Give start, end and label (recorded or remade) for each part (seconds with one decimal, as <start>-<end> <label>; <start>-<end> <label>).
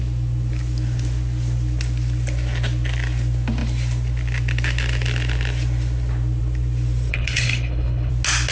0.0-7.1 recorded; 7.1-8.1 remade; 8.1-8.5 recorded